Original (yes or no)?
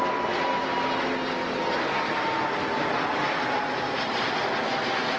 yes